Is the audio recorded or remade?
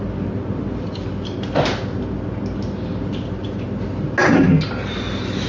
recorded